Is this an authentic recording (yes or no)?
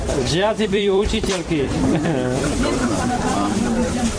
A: no